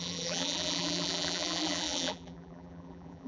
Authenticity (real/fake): fake